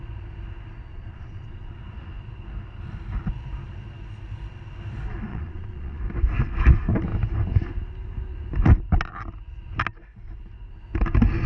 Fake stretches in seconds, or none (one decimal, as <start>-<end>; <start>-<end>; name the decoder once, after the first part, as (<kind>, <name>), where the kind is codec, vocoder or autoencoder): 0.9-1.7 (vocoder, Vocos); 5.3-6.0